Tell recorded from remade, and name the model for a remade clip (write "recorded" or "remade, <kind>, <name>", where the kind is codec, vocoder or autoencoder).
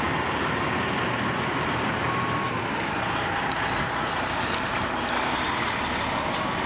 recorded